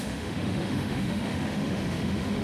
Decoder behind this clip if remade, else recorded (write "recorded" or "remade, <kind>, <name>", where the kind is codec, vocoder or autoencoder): remade, autoencoder, DAC-VAE